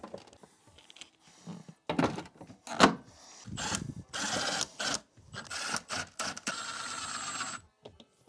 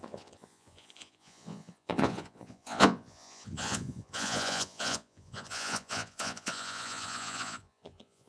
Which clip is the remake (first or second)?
second